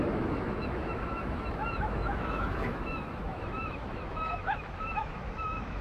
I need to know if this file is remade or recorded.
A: remade